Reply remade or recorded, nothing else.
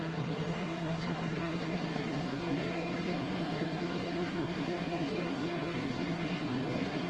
remade